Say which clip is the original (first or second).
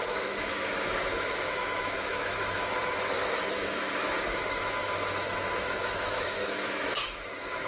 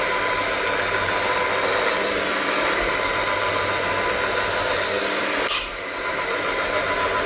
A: second